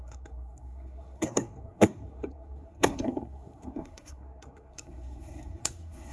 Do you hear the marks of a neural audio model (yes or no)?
yes